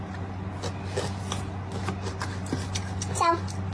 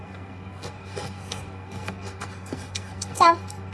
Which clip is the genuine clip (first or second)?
first